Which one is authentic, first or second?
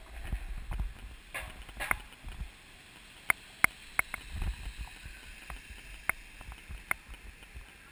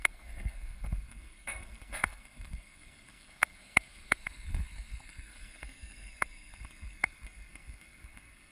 first